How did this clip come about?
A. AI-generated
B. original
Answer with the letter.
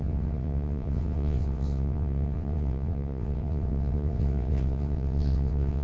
A